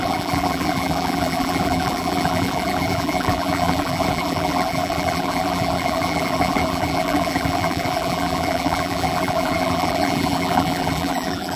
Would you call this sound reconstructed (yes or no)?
yes